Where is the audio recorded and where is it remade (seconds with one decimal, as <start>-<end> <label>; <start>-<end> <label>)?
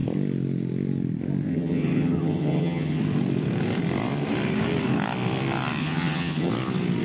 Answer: 0.0-1.5 recorded; 1.5-3.0 remade; 3.0-5.8 recorded; 5.8-6.5 remade; 6.5-7.0 recorded